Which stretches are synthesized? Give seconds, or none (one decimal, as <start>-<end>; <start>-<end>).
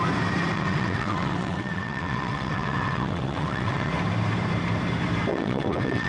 0.5-3.9; 5.3-6.1